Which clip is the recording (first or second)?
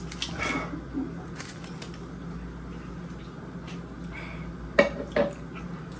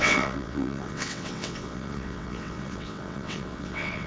first